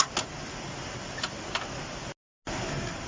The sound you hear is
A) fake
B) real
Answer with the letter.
B